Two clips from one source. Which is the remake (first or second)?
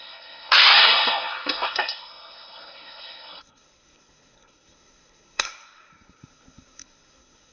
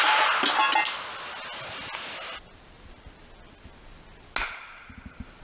first